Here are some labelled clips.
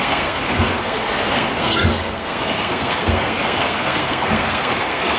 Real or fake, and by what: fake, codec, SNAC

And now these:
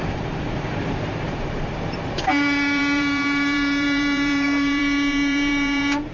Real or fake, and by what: fake, vocoder, BigVGAN v2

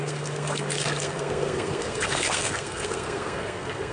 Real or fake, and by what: fake, codec, SNAC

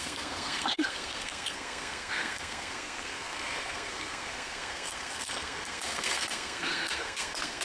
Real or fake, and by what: fake, codec, SNAC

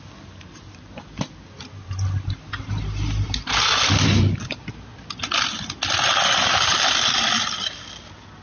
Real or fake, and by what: real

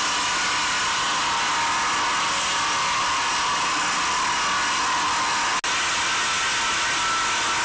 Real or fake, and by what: real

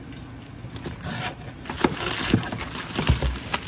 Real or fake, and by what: real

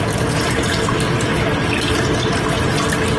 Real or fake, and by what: real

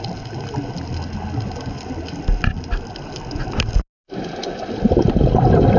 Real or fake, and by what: real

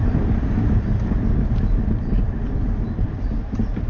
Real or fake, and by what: real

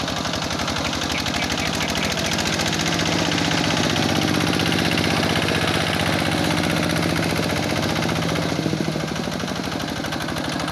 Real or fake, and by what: real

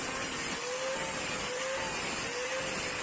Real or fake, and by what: real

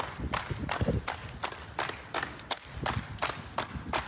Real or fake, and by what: real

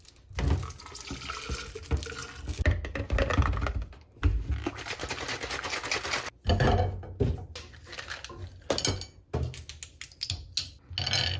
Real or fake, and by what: real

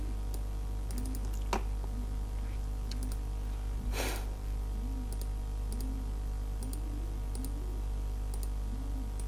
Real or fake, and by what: real